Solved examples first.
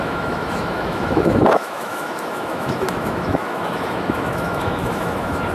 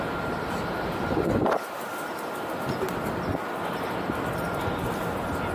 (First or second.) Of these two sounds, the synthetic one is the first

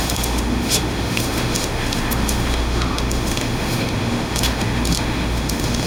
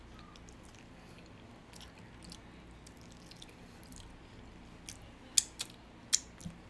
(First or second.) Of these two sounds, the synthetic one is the first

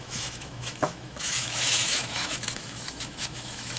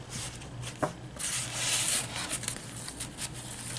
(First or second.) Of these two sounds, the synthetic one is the first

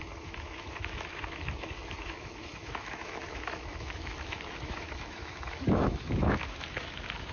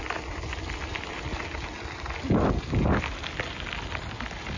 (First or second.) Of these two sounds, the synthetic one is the first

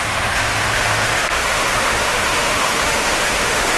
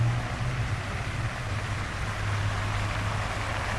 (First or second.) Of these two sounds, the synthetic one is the first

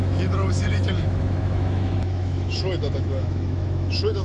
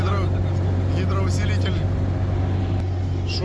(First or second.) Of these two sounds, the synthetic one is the first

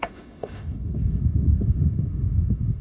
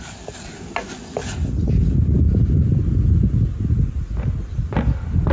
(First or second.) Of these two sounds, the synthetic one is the first